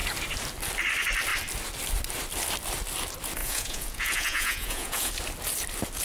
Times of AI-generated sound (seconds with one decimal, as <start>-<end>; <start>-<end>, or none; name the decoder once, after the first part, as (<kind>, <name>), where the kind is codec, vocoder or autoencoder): 3.4-5.1 (vocoder, Vocos)